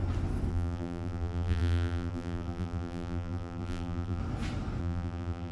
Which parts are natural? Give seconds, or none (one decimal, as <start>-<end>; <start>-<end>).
0.0-0.5; 4.2-4.8